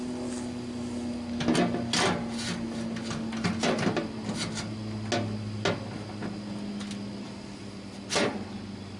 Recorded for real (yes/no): yes